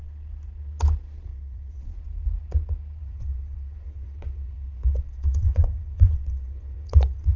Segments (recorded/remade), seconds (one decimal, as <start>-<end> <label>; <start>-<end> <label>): 0.0-1.3 recorded; 1.3-1.8 remade; 1.8-3.0 recorded; 3.0-7.4 remade